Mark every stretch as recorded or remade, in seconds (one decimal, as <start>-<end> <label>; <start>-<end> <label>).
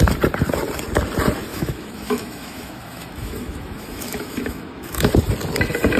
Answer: 0.0-1.5 recorded; 1.5-5.1 remade; 5.1-6.0 recorded